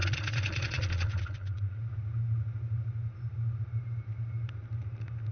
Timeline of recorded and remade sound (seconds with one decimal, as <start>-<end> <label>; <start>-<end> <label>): 0.0-1.8 remade; 1.8-5.3 recorded